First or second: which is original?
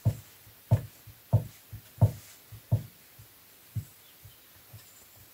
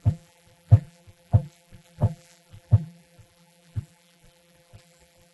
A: first